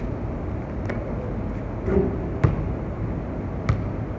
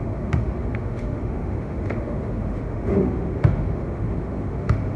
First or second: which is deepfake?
second